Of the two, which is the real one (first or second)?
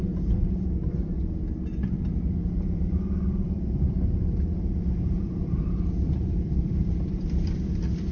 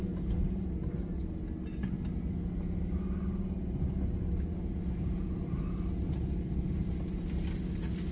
second